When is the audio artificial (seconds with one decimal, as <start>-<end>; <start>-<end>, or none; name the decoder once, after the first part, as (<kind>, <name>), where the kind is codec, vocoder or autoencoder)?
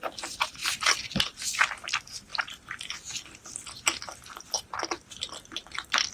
none